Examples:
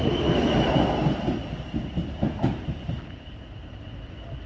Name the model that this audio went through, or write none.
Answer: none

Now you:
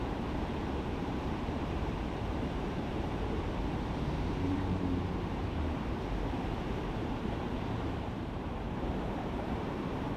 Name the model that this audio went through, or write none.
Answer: vocoder, BigVGAN v2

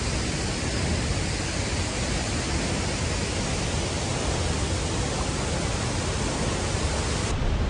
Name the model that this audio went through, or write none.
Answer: none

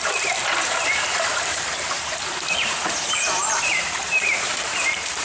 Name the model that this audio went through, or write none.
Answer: vocoder, BigVGAN v2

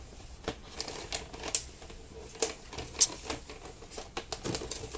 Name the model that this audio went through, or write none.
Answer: none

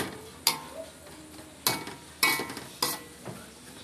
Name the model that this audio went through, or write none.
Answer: none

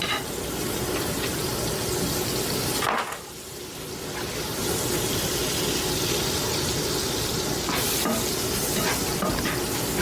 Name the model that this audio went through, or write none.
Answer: none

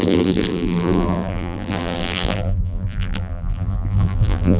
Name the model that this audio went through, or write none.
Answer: vocoder, BigVGAN v2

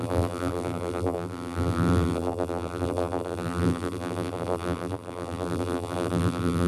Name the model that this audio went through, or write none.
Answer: vocoder, BigVGAN v2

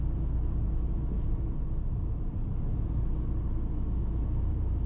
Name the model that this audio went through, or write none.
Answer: none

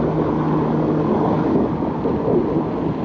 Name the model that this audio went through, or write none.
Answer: none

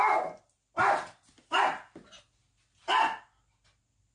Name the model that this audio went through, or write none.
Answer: none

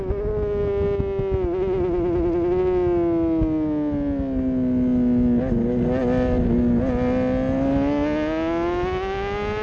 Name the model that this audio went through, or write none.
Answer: none